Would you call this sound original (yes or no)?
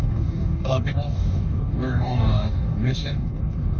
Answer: no